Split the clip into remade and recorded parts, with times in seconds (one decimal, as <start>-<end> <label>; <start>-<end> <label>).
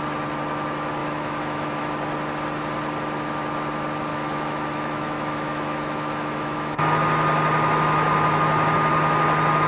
0.0-1.0 recorded; 1.0-1.8 remade; 1.8-4.1 recorded; 4.1-6.8 remade; 6.8-9.7 recorded